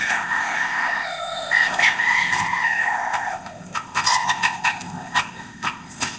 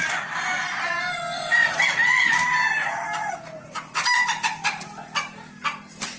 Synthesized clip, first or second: first